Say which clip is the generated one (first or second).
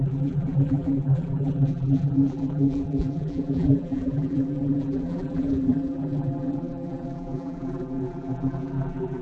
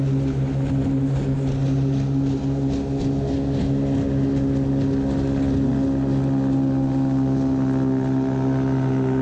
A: first